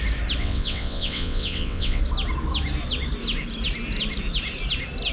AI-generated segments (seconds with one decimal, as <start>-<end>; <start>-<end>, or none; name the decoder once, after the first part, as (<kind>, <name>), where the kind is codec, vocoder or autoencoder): 0.4-2.0 (vocoder, WaveNeXt)